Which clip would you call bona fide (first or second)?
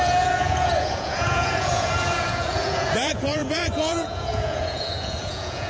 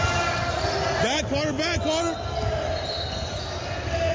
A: second